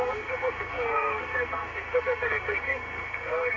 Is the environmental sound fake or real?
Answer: fake